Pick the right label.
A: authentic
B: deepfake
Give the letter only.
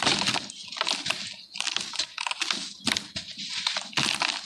A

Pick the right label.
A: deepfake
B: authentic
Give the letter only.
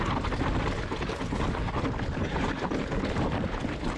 B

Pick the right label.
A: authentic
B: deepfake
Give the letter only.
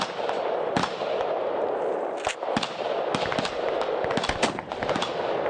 A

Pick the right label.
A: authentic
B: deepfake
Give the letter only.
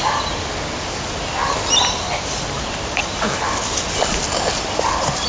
A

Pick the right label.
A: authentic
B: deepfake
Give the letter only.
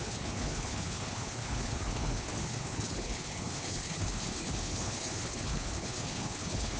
B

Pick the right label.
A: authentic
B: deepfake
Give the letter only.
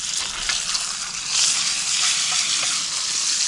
A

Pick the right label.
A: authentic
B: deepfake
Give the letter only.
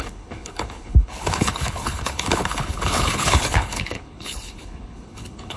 B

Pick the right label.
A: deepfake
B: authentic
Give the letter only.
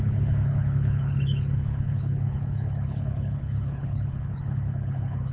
A